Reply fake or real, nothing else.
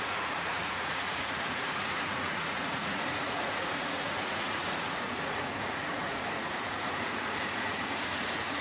fake